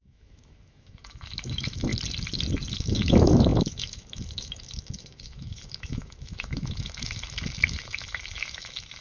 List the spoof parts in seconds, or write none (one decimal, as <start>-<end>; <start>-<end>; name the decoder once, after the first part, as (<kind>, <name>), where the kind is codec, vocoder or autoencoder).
0.0-1.9 (autoencoder, DAC-VAE); 2.7-9.0